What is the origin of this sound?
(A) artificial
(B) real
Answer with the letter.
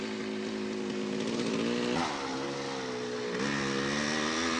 B